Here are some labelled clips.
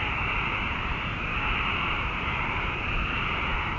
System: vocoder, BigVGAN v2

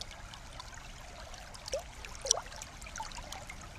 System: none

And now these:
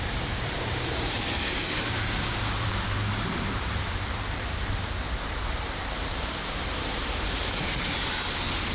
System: vocoder, BigVGAN v2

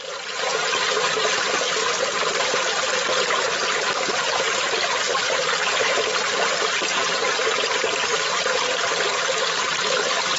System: vocoder, BigVGAN v2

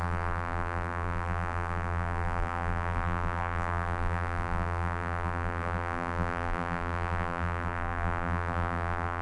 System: vocoder, BigVGAN v2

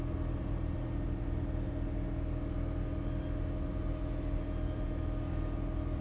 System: none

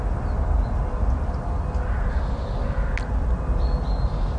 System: none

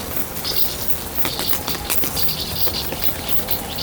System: none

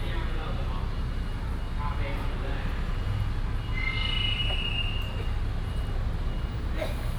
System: none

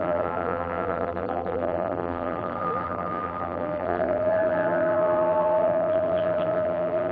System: vocoder, BigVGAN v2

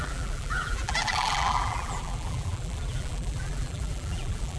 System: vocoder, BigVGAN v2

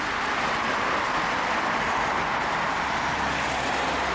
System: none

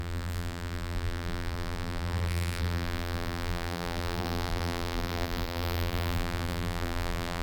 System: vocoder, BigVGAN v2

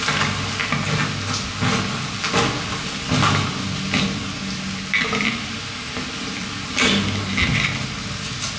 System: none